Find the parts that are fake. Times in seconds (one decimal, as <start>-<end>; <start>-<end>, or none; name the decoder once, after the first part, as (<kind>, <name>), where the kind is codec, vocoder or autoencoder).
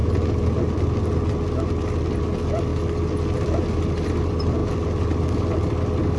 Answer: none